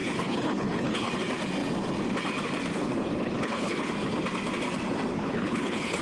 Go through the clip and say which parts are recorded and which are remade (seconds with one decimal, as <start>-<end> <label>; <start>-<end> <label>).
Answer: 0.0-1.1 remade; 1.1-2.7 recorded; 2.7-3.9 remade; 3.9-5.1 recorded; 5.1-6.0 remade